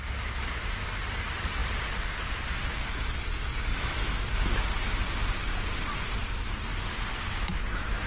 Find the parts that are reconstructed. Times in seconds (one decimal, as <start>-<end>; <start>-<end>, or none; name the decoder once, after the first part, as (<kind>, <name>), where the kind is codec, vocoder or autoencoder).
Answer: 3.7-4.3 (autoencoder, DAC-VAE); 7.1-8.1